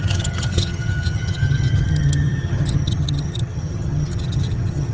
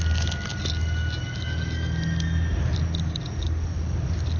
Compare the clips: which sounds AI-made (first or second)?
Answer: first